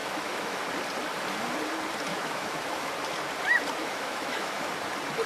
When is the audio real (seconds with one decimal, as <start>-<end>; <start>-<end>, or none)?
0.6-2.1; 2.9-3.8; 4.7-5.3